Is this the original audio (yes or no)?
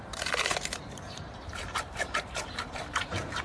no